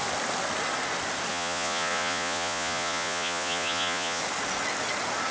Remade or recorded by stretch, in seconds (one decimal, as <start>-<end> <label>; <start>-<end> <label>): 0.0-1.3 recorded; 1.3-4.2 remade; 4.2-5.3 recorded